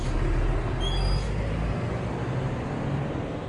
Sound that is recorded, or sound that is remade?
recorded